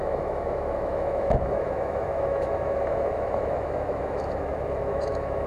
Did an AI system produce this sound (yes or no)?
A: yes